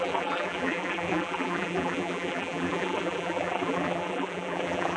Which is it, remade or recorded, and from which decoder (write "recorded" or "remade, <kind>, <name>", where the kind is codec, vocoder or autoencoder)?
remade, vocoder, BigVGAN v2